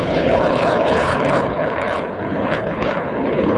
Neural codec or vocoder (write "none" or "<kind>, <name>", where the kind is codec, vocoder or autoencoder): codec, HILCodec